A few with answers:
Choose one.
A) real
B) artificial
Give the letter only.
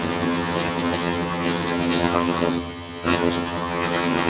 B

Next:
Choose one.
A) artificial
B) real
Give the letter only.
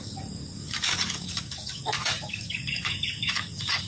A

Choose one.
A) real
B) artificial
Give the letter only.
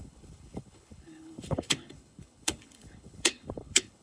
B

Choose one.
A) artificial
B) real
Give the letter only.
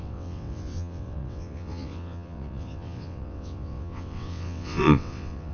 A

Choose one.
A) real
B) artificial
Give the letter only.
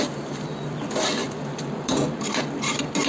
A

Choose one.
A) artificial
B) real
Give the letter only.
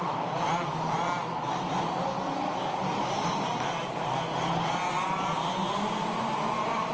A